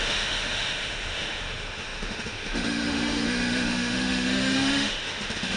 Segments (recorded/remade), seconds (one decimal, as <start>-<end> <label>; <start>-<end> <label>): 0.0-5.6 remade